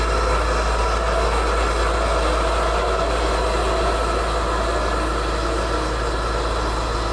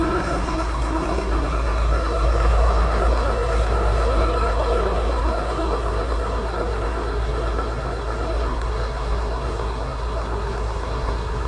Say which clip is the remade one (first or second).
second